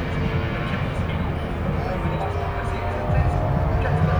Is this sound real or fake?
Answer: real